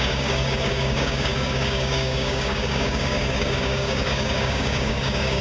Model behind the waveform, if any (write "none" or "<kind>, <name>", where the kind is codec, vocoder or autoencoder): codec, DAC